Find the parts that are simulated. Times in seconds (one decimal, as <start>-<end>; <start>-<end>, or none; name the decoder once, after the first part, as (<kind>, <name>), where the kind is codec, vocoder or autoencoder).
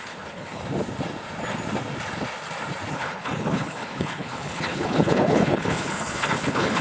0.0-0.6 (codec, HILCodec); 2.9-6.8